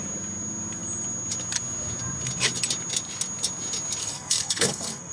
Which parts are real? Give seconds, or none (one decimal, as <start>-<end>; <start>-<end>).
0.0-4.0